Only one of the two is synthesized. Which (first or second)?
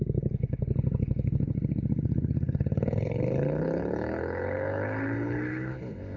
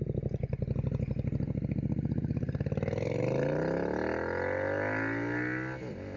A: first